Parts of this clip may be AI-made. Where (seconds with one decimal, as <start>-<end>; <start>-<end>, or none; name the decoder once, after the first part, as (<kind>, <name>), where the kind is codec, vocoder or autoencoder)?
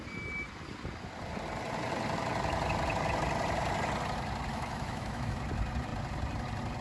4.5-5.4 (autoencoder, DAC-VAE)